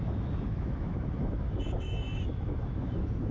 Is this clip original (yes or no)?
no